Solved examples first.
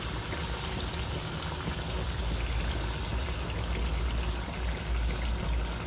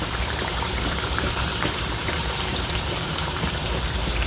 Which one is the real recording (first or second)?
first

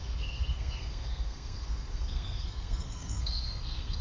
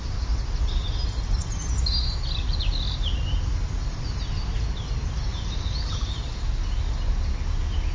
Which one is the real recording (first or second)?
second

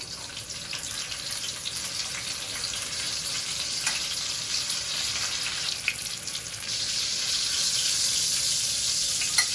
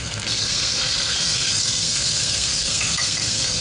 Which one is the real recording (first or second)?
first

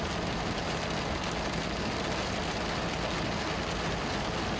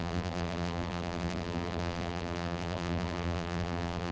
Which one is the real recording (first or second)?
first